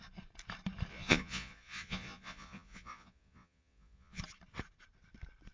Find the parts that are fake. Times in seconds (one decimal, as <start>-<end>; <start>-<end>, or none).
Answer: 0.9-4.2

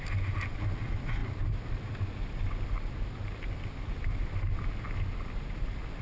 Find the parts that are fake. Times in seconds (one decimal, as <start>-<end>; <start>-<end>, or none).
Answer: none